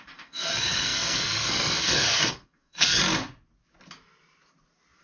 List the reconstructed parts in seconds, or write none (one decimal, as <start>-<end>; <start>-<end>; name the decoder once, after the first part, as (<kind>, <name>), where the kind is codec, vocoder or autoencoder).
0.0-3.0 (codec, SNAC)